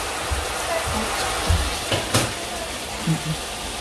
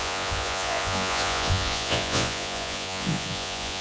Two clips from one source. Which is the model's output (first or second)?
second